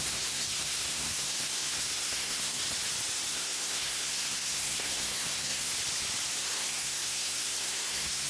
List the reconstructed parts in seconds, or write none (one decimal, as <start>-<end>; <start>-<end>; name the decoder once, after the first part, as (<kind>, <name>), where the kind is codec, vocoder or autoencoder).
0.0-2.6 (codec, SNAC); 3.3-5.7; 6.4-8.3